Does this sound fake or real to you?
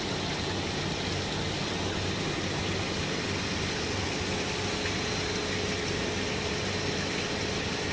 real